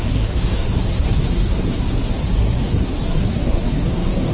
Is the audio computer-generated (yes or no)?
yes